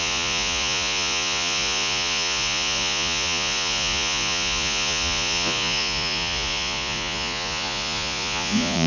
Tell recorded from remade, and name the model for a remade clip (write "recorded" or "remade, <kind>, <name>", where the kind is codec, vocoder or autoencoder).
remade, vocoder, Vocos